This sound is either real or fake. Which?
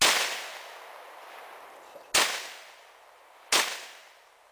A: real